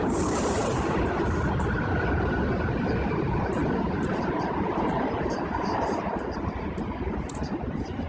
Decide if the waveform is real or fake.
real